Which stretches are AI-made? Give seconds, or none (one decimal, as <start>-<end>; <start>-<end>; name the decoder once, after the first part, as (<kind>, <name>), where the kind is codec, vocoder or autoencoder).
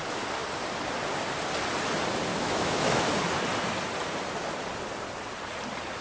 2.3-3.1 (autoencoder, DAC-VAE)